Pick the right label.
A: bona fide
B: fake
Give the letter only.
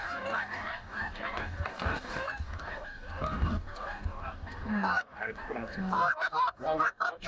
B